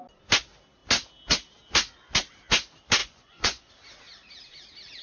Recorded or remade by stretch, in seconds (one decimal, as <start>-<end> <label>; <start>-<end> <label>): 0.0-3.0 recorded; 3.0-3.7 remade; 3.7-5.0 recorded